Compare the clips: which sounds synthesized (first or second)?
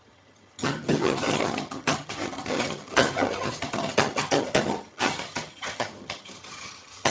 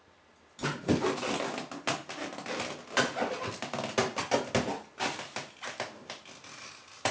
first